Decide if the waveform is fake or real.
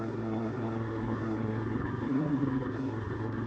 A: fake